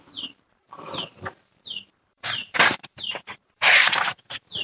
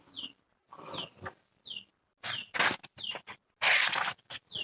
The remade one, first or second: first